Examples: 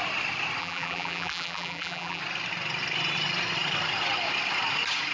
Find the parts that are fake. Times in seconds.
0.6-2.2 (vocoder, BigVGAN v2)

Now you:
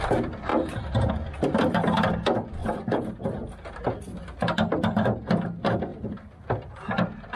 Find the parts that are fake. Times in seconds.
0.5-1.1 (vocoder, BigVGAN v2); 2.6-3.8; 5.9-6.9

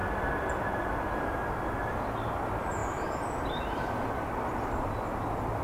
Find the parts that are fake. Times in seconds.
1.2-5.6 (vocoder, BigVGAN v2)